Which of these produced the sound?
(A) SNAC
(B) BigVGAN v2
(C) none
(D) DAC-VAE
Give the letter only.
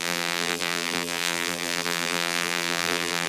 B